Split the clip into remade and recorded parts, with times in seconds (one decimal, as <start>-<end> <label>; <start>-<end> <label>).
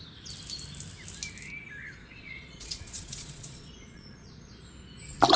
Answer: 0.0-2.0 recorded; 2.0-4.5 remade; 4.5-5.4 recorded